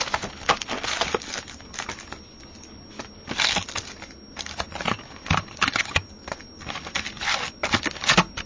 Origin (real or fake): real